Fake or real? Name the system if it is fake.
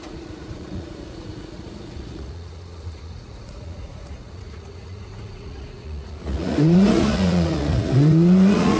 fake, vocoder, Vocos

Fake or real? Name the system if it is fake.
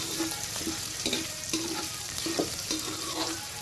fake, vocoder, BigVGAN v2